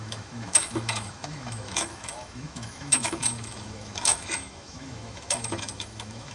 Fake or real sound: fake